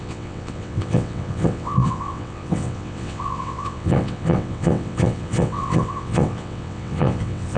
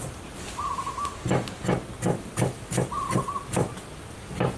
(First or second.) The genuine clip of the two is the second